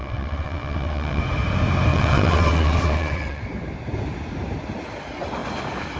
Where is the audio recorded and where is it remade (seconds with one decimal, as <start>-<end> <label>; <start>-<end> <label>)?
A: 0.0-1.2 remade; 1.2-1.9 recorded; 1.9-3.4 remade; 3.4-6.0 recorded